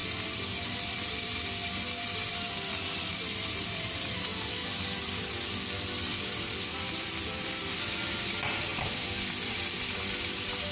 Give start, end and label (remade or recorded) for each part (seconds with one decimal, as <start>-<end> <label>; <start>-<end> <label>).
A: 0.0-4.3 remade; 4.3-5.2 recorded; 5.2-10.7 remade